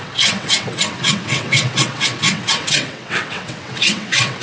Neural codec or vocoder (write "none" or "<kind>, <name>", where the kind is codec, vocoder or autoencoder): vocoder, WaveNeXt